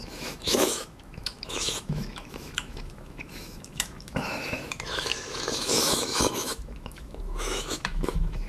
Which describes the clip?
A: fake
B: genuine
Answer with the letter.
A